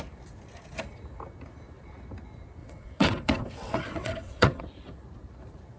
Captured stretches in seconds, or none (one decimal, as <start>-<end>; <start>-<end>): 0.0-2.6; 4.6-5.8